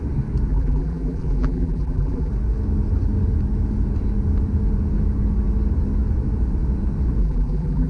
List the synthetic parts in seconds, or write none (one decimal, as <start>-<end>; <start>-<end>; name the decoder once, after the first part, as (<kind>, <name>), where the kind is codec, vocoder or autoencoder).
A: 0.5-2.3 (vocoder, BigVGAN v2); 7.2-7.9